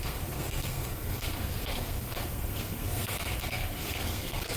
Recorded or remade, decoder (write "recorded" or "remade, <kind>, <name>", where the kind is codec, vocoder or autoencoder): remade, codec, SNAC